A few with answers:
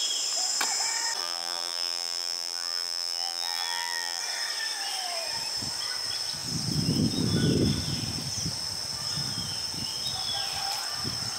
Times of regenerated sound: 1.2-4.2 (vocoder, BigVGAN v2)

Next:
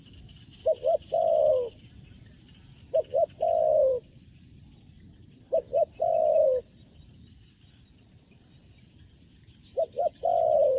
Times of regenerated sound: 6.3-8.3 (vocoder, BigVGAN v2)

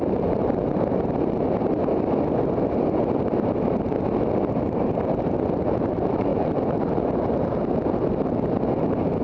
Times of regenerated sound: 0.0-1.8 (vocoder, BigVGAN v2); 4.6-9.2

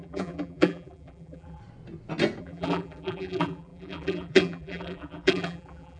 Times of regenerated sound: 0.0-1.6 (vocoder, BigVGAN v2); 2.4-6.0

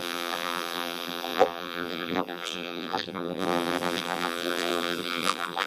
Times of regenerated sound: 0.0-5.7 (vocoder, BigVGAN v2)

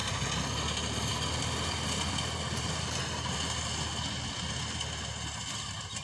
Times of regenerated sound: none